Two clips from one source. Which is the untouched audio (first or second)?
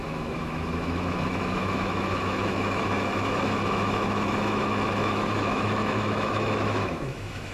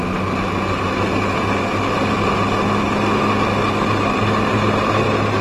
second